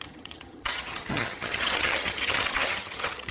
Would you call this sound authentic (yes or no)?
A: no